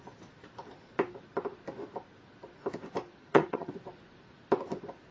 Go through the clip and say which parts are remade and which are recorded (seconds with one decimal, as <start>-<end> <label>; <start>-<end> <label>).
0.0-3.2 recorded; 3.2-3.7 remade; 3.7-5.1 recorded